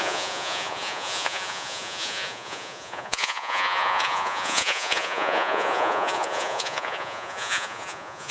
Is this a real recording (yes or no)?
no